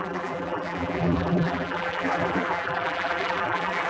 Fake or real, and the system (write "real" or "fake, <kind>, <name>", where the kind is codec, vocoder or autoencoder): fake, vocoder, BigVGAN v2